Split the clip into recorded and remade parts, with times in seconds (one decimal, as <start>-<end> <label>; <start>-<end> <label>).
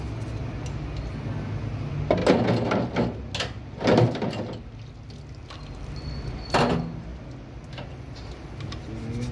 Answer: 0.0-9.3 recorded